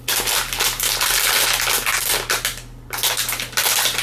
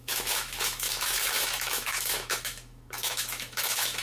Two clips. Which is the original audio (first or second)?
first